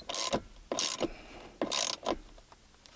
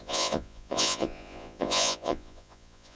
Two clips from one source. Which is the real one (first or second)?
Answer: first